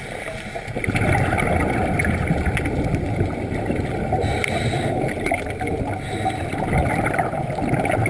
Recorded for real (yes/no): yes